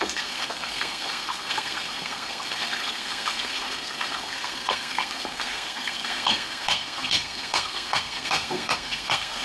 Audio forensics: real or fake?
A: fake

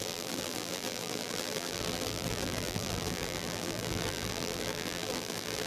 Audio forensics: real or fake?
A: fake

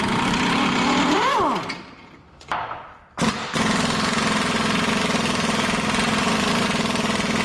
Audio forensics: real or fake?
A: real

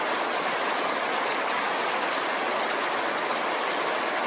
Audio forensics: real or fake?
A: real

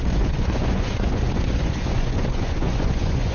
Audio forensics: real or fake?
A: fake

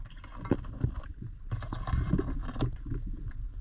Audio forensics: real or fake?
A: real